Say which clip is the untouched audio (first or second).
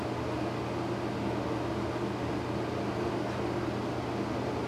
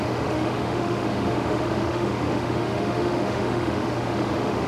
first